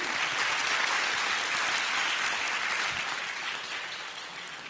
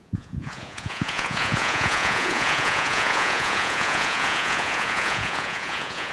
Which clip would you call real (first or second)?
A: first